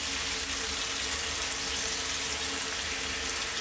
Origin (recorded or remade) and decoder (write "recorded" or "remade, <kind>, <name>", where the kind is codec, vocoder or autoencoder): recorded